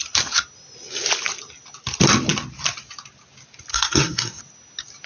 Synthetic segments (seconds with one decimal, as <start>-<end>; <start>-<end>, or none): 3.7-4.4